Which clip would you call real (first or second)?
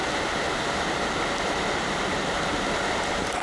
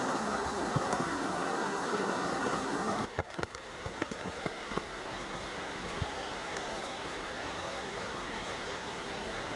first